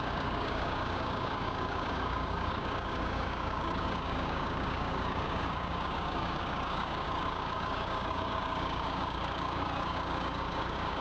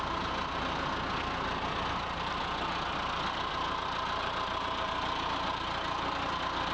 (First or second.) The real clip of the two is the second